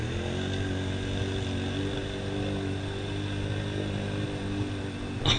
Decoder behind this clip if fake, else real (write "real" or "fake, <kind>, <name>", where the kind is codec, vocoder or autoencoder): real